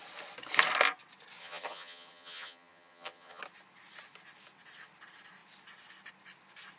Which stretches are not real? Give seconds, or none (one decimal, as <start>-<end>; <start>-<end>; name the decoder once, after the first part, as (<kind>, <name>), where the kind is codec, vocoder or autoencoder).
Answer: 1.4-3.4 (vocoder, HiFi-GAN)